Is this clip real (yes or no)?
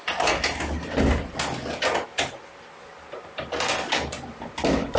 yes